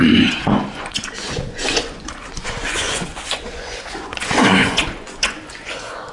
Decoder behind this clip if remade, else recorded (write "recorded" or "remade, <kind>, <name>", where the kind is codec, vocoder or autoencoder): remade, vocoder, Vocos